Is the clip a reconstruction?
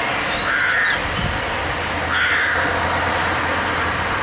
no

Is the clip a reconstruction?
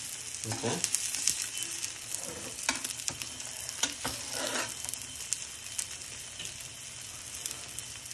no